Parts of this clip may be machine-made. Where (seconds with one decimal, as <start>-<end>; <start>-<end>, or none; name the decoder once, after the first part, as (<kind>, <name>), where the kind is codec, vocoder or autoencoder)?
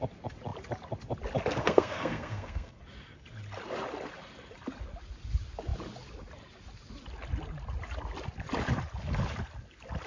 1.6-2.8 (codec, SNAC)